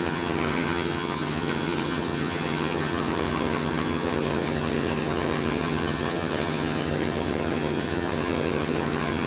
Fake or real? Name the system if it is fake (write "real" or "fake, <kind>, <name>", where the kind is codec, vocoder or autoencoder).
fake, vocoder, HiFi-GAN